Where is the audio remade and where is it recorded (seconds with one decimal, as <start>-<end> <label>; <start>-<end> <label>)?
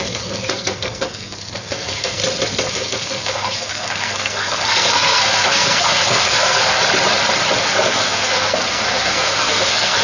0.0-2.2 remade; 2.2-2.7 recorded; 2.7-6.8 remade; 6.8-7.6 recorded; 7.6-10.0 remade